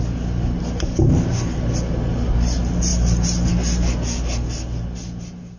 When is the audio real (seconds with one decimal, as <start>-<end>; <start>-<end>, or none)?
0.0-5.6